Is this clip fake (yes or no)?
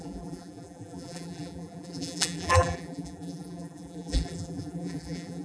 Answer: yes